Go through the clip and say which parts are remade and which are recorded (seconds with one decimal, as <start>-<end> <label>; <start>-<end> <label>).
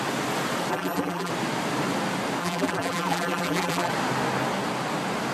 0.0-0.7 recorded; 0.7-1.3 remade; 1.3-2.4 recorded; 2.4-3.9 remade; 3.9-5.3 recorded